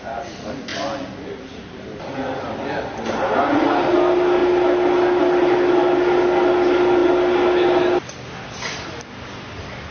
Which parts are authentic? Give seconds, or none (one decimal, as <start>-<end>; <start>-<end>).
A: 0.0-9.9